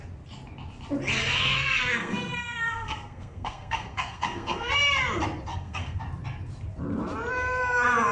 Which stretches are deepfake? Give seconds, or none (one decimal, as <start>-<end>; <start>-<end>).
1.2-4.7; 5.5-6.0